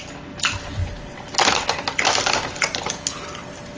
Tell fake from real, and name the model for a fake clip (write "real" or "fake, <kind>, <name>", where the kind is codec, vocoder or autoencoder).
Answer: real